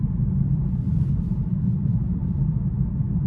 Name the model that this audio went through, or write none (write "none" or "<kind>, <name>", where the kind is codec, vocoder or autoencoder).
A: none